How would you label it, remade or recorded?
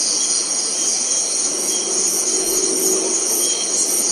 remade